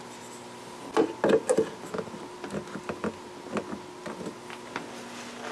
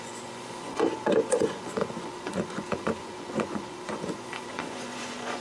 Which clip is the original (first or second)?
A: first